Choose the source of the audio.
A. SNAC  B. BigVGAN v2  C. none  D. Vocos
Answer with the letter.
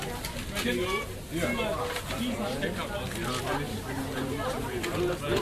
C